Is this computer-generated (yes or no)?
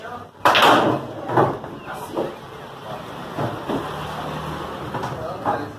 no